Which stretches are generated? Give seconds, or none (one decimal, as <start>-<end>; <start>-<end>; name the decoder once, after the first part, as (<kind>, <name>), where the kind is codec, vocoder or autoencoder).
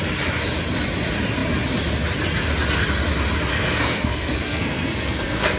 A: 3.5-5.6 (codec, SNAC)